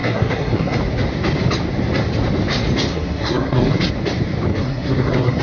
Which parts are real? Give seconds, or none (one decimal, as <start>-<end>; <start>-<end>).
0.8-2.9; 3.9-4.5